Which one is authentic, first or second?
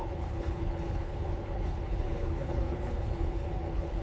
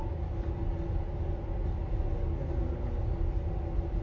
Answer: second